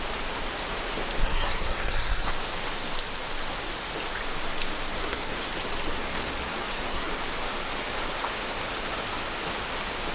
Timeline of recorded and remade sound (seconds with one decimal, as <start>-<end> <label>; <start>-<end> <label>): 0.0-1.2 recorded; 1.2-2.3 remade; 2.3-5.0 recorded; 5.0-5.5 remade; 5.5-6.5 recorded; 6.5-7.1 remade; 7.1-10.1 recorded